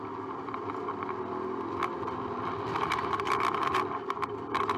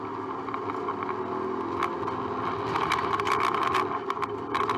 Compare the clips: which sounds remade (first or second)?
first